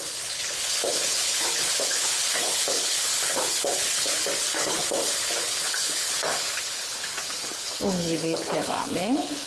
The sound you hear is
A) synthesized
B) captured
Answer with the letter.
A